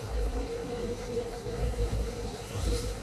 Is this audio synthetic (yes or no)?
yes